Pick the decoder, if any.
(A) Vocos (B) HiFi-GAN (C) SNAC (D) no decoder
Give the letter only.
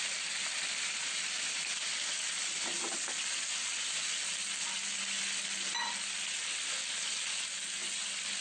D